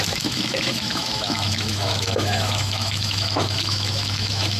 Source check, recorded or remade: remade